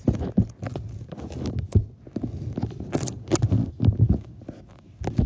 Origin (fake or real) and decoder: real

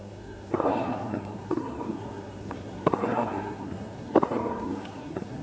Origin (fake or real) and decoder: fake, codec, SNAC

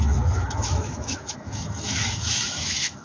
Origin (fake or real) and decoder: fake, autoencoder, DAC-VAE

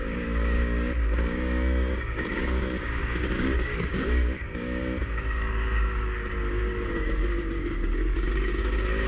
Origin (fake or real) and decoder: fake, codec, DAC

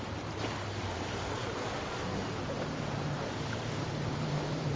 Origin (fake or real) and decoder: fake, vocoder, BigVGAN v2